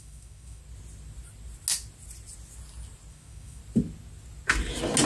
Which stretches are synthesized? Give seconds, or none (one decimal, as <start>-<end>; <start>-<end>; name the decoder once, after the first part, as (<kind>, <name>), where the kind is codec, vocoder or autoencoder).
0.0-0.6 (autoencoder, DAC-VAE); 3.1-3.6